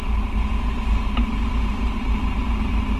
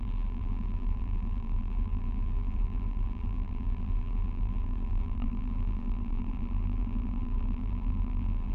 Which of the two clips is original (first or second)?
first